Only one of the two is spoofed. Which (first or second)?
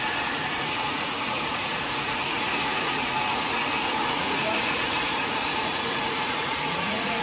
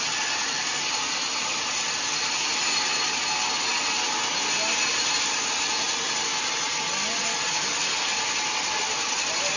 first